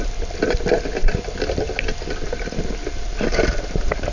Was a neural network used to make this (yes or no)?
no